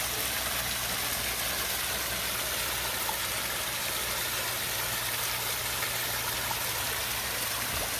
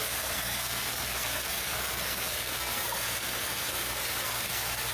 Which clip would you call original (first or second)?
first